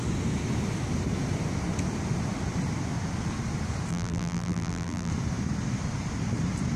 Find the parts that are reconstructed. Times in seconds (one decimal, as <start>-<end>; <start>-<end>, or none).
3.9-5.1